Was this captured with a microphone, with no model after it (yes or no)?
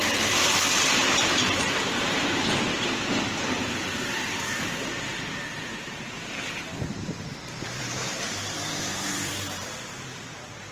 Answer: no